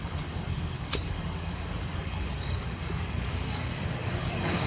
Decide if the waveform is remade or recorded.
remade